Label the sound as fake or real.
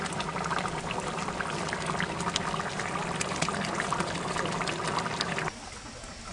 real